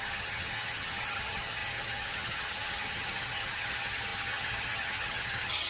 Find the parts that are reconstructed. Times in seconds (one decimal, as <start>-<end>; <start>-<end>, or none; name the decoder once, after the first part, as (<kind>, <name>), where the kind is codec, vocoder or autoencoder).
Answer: 0.0-5.7 (vocoder, HiFi-GAN)